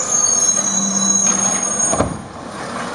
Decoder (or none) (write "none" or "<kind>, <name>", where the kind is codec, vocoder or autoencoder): none